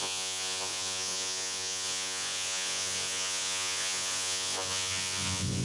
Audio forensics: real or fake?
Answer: fake